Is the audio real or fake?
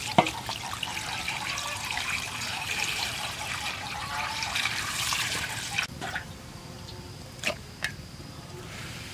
fake